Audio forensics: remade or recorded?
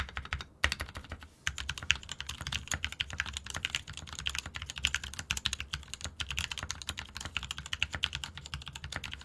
recorded